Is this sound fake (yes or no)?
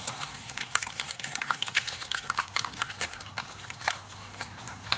yes